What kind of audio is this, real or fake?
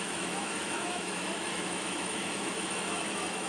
fake